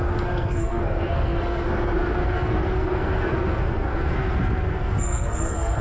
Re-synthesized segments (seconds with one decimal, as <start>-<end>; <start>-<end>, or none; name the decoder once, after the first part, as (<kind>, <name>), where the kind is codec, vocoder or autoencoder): 0.0-5.8 (codec, SNAC)